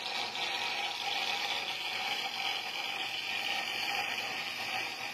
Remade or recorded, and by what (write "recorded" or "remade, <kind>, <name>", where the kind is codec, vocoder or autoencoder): recorded